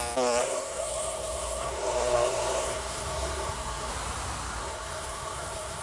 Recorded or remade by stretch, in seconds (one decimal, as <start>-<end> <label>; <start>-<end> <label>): 0.0-0.4 recorded; 0.4-3.9 remade; 3.9-4.6 recorded; 4.6-5.8 remade